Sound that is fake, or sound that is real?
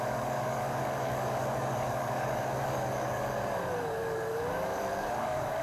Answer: fake